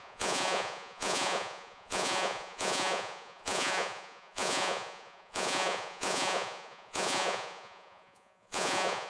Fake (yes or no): yes